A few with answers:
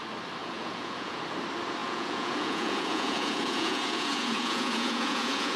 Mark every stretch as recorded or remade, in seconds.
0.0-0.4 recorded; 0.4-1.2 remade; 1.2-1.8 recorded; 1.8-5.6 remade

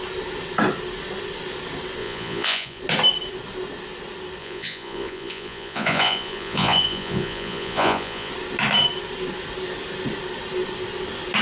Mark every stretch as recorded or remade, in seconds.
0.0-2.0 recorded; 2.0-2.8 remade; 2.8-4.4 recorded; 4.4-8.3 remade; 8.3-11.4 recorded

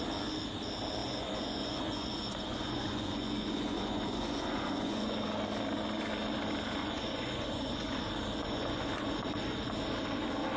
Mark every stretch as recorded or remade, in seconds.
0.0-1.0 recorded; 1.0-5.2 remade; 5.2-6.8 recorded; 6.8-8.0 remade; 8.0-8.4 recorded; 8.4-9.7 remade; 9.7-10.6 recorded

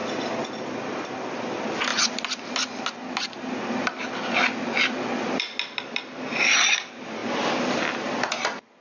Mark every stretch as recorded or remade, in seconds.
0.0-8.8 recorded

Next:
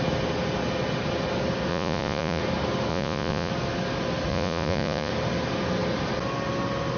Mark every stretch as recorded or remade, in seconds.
0.0-1.7 recorded; 1.7-2.4 remade; 2.4-2.9 recorded; 2.9-3.5 remade; 3.5-4.3 recorded; 4.3-5.1 remade; 5.1-7.0 recorded

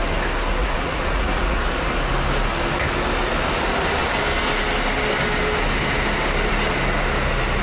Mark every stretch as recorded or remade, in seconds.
0.0-0.6 recorded; 0.6-1.6 remade; 1.6-7.6 recorded

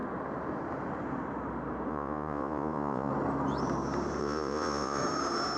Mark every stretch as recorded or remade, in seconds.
0.0-1.9 recorded; 1.9-3.1 remade; 3.1-4.2 recorded; 4.2-5.0 remade; 5.0-5.6 recorded